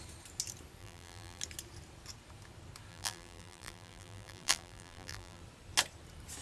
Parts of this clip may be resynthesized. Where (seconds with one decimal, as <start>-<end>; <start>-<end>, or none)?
0.8-1.4; 2.9-5.4